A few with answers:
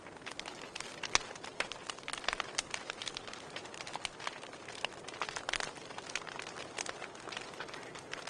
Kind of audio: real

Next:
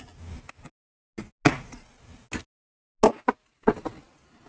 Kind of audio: real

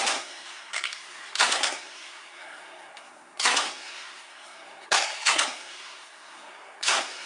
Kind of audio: fake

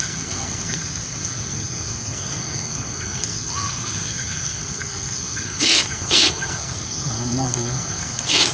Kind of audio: fake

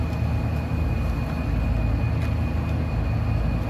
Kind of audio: real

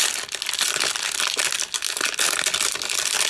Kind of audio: real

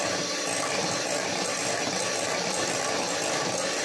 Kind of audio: real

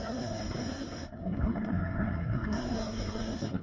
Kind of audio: fake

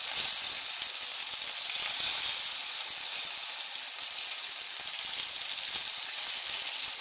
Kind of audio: real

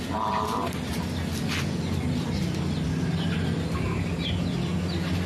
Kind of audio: real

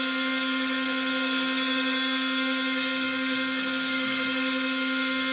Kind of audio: fake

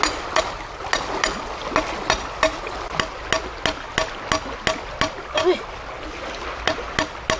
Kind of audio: real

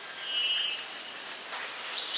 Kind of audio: real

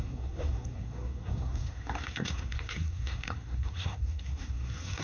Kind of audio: fake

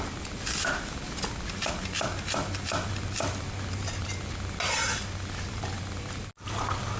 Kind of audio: real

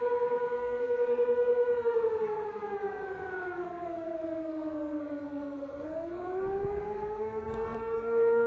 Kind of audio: fake